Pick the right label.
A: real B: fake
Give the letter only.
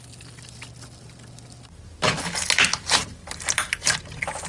A